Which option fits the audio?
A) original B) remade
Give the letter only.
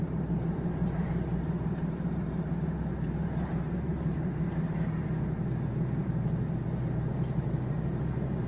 B